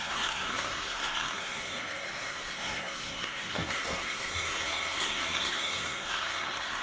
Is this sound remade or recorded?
remade